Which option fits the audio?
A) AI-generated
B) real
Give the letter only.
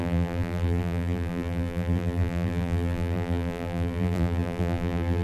A